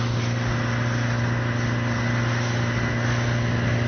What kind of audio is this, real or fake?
real